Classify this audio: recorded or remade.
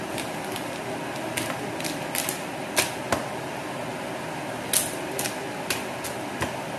recorded